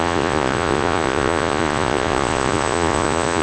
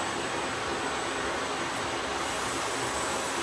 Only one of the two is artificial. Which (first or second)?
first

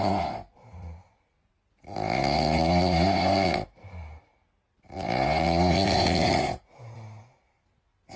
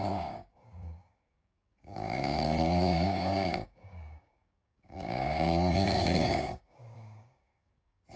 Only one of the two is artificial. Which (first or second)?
second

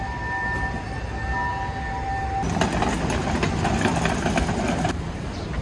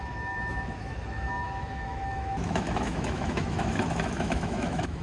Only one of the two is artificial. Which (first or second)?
second